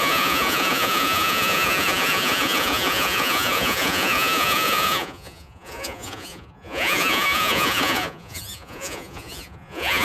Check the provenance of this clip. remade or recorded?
remade